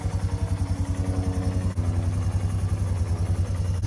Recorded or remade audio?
recorded